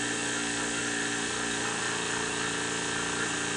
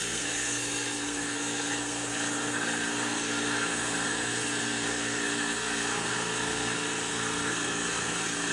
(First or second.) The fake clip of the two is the second